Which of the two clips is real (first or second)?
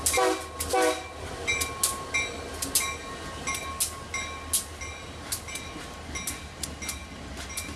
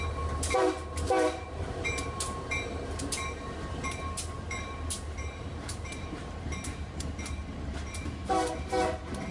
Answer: first